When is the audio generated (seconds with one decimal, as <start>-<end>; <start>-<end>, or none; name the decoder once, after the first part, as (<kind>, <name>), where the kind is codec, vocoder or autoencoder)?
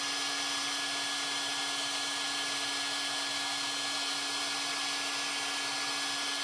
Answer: none